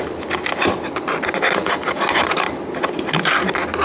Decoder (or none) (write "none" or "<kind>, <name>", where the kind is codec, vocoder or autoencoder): none